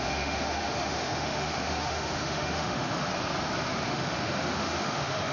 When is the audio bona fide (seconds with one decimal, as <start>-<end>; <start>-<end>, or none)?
3.1-3.9